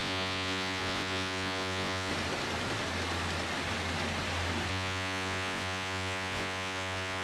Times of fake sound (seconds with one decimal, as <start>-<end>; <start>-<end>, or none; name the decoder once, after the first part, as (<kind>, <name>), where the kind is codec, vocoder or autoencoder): 0.0-2.1 (vocoder, Vocos); 4.7-7.2